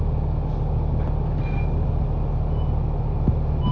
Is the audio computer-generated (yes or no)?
no